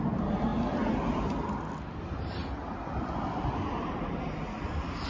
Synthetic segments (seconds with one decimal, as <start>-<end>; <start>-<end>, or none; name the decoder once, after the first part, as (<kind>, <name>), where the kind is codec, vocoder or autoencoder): 0.0-0.5 (vocoder, BigVGAN v2); 2.0-2.4